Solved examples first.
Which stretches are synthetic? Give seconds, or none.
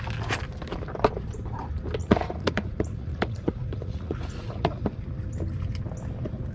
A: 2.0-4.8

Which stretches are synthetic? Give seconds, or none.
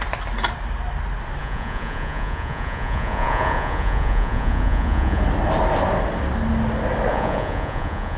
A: 1.4-5.2; 7.1-8.2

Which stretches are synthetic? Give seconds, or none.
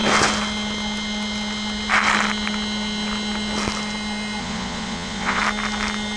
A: 4.4-5.4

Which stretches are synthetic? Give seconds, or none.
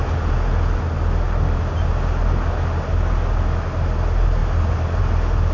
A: none